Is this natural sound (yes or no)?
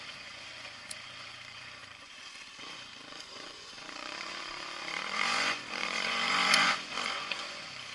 no